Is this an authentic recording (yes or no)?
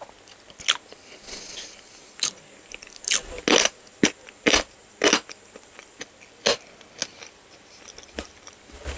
yes